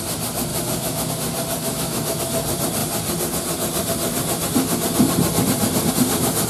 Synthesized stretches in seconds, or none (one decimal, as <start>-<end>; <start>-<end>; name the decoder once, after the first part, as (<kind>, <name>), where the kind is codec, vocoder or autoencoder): 0.5-1.1 (autoencoder, DAC-VAE); 1.6-2.2